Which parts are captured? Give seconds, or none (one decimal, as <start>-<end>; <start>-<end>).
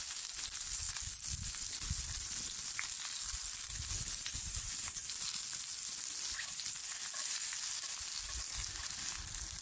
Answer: 0.0-9.6